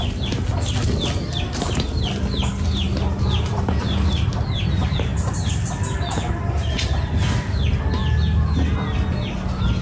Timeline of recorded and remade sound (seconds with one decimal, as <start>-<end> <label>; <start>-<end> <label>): 0.0-9.8 recorded